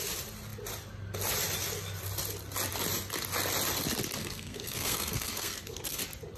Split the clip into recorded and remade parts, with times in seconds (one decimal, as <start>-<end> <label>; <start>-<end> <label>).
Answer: 0.0-4.2 recorded; 4.2-6.0 remade; 6.0-6.4 recorded